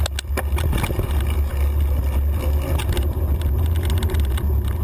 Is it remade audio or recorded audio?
recorded